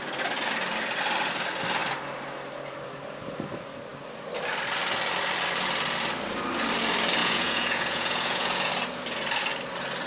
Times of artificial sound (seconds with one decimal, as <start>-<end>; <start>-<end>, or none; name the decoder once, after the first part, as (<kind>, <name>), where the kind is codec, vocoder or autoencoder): 7.2-8.7 (vocoder, Vocos)